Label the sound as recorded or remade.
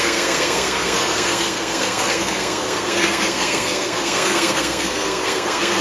remade